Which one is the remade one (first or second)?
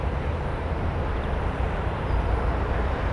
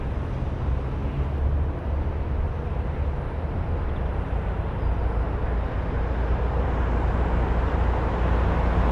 first